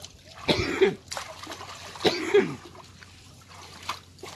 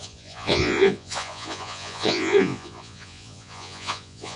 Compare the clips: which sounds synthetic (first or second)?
second